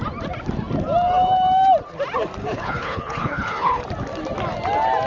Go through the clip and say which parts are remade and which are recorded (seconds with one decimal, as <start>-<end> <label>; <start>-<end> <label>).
0.0-2.4 recorded; 2.4-3.8 remade; 3.8-5.1 recorded